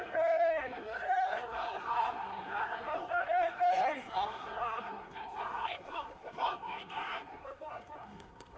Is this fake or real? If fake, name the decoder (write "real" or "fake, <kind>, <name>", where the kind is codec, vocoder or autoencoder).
fake, codec, SNAC